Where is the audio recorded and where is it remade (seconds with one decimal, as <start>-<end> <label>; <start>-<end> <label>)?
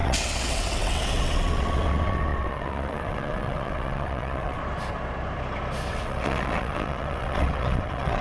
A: 0.0-4.6 remade; 4.6-5.9 recorded; 5.9-8.2 remade